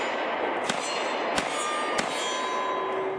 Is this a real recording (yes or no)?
yes